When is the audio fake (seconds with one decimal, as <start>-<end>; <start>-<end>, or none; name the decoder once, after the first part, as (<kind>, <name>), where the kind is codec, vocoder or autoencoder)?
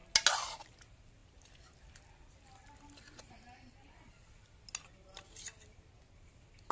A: none